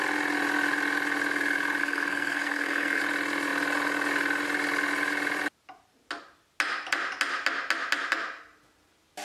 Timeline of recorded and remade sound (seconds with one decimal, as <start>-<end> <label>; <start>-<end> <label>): 0.0-1.8 recorded; 1.8-3.0 remade; 3.0-9.2 recorded